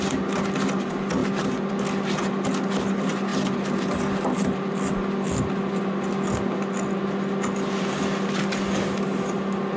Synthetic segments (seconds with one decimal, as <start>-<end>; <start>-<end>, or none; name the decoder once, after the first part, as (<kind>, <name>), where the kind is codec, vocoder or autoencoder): none